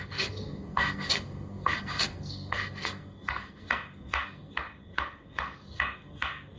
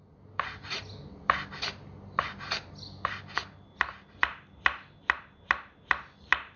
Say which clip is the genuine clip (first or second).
second